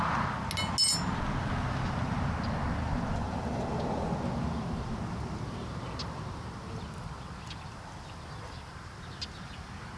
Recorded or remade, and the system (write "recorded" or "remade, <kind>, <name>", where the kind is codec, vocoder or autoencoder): recorded